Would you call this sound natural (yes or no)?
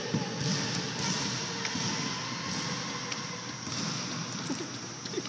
yes